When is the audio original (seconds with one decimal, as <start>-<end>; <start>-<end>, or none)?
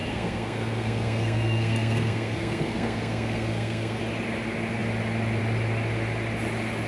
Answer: 4.0-6.9